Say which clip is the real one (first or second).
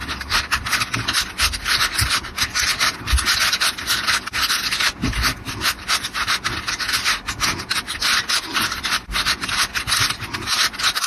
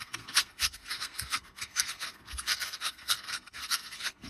first